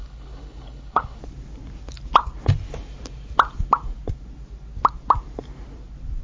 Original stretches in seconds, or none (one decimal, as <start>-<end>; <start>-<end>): 1.2-6.2